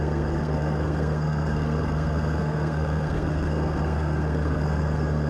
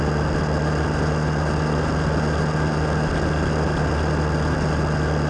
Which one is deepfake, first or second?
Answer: first